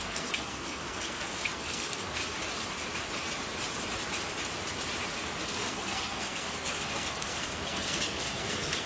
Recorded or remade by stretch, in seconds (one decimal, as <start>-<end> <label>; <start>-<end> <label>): 0.0-2.2 remade; 2.2-5.4 recorded; 5.4-8.9 remade